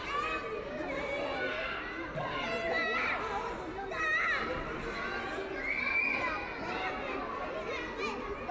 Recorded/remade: recorded